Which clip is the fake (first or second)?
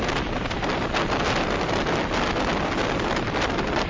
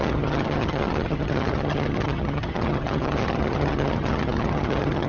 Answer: second